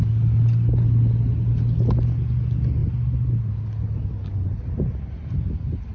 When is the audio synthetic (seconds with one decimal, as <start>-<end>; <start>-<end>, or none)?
none